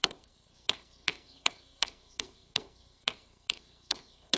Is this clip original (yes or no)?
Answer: no